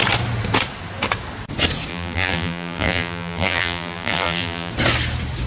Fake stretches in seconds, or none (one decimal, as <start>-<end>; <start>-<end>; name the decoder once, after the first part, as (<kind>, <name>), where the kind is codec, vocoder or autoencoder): 1.9-4.7 (vocoder, BigVGAN v2)